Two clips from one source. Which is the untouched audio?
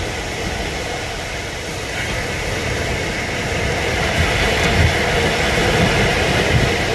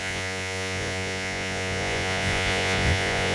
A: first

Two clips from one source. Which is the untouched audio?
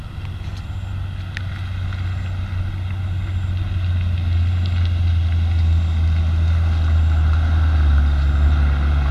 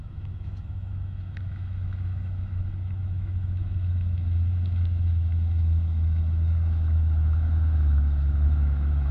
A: first